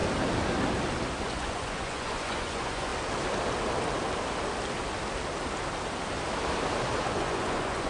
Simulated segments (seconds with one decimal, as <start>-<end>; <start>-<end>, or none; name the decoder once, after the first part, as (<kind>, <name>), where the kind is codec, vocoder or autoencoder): 1.2-2.9 (vocoder, Vocos); 7.0-7.9